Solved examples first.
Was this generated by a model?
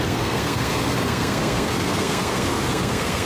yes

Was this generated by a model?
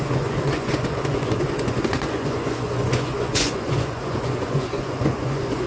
yes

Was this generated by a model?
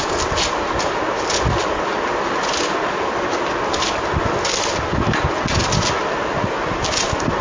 no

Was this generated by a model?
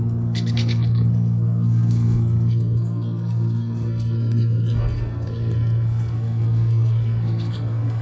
yes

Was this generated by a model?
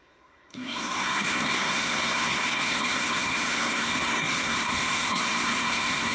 yes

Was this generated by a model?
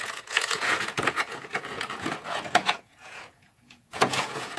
yes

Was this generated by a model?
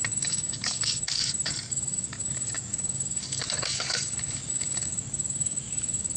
yes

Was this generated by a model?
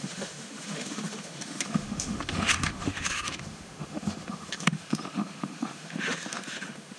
yes